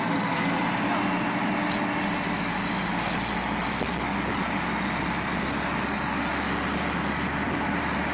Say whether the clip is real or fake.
real